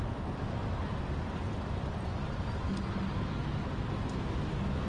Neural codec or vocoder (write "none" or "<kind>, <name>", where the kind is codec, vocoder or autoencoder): none